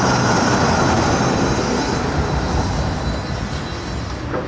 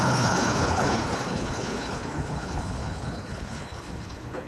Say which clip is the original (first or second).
first